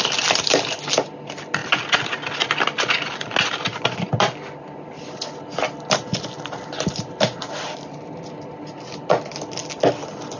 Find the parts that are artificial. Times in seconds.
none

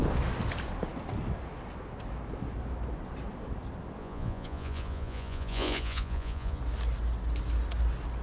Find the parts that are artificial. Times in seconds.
4.0-6.6 (vocoder, Vocos)

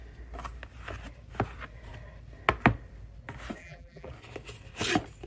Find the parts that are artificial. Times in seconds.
3.6-4.1 (vocoder, BigVGAN v2)

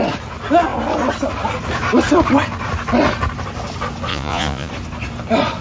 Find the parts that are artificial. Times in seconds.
4.1-4.7 (vocoder, Vocos)

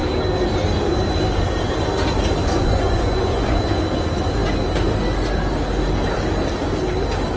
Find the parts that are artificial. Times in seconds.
2.4-3.7 (vocoder, Vocos)

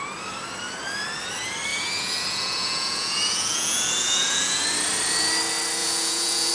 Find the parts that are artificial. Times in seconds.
1.7-4.6 (vocoder, Vocos); 5.8-6.5

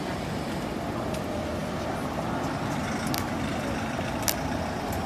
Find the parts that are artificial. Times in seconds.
none